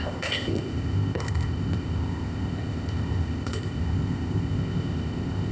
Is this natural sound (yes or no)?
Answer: no